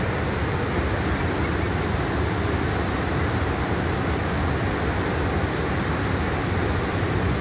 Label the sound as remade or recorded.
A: recorded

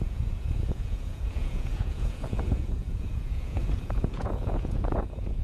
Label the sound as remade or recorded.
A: remade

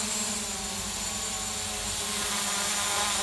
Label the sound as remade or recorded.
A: recorded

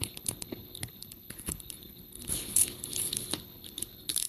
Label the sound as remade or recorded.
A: remade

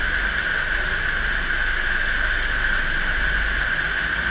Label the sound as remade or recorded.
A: recorded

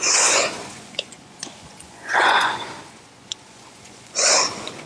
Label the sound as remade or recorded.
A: remade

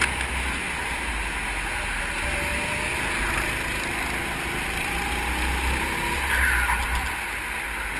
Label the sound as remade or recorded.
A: recorded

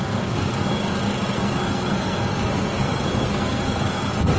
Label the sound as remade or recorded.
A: remade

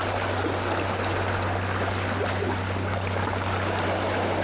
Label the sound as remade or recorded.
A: recorded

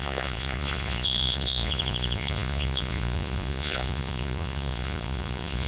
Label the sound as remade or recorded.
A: remade